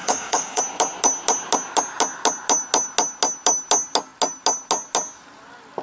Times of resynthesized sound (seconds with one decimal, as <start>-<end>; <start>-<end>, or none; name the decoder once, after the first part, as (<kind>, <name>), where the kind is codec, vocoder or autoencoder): 0.0-0.6 (codec, DAC)